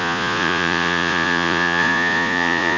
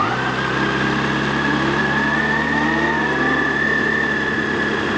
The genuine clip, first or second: second